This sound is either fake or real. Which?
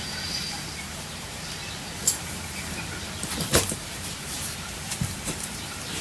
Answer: fake